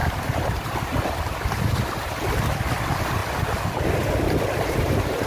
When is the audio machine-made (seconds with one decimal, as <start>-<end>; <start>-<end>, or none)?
0.0-2.6; 3.2-4.4